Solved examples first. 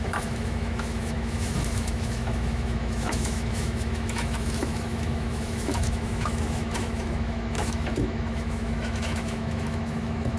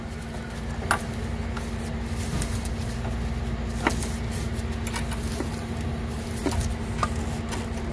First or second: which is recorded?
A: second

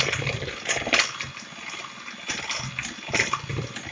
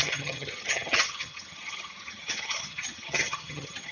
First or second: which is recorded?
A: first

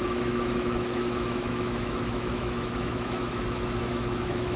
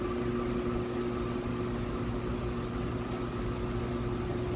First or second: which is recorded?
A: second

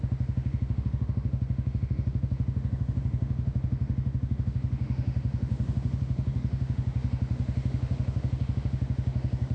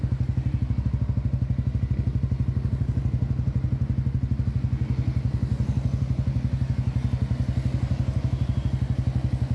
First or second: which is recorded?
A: second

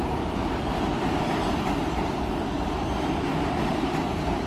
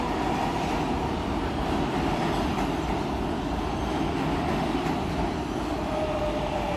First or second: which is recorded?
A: second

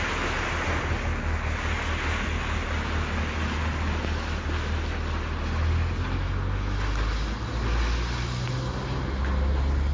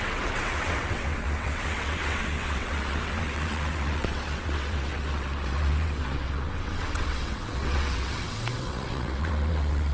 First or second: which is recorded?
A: first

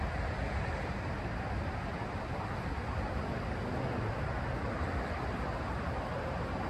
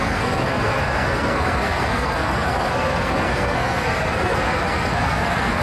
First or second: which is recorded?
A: first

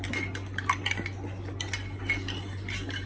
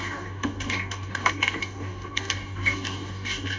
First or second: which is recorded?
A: first